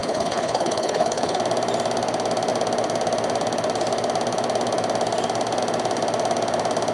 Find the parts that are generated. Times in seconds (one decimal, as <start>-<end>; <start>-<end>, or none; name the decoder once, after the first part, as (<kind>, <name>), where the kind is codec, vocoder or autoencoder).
0.0-1.4 (codec, HILCodec)